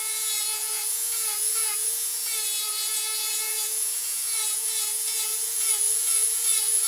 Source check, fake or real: fake